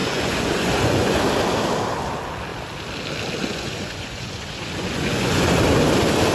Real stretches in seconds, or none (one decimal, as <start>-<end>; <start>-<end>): 1.2-3.4; 5.6-6.3